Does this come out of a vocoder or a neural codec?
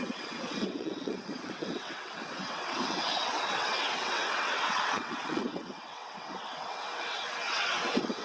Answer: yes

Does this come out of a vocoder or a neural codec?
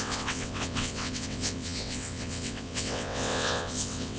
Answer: yes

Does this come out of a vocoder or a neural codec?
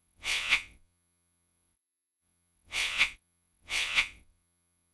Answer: yes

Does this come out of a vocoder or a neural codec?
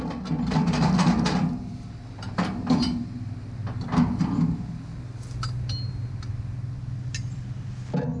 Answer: no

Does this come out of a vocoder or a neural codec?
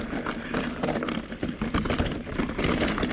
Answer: no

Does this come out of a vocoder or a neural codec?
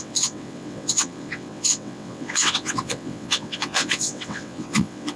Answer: yes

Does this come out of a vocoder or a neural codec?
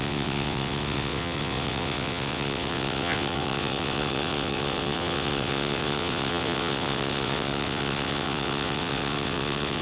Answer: yes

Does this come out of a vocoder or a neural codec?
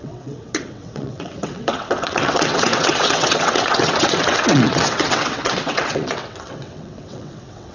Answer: yes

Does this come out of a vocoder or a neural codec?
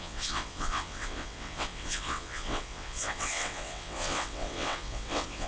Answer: yes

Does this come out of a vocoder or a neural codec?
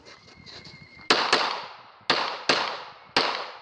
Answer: no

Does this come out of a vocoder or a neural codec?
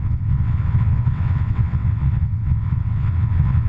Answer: yes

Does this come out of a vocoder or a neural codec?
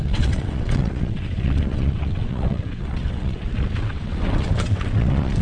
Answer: yes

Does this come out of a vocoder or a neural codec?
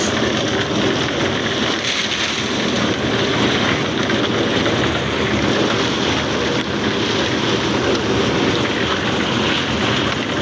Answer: no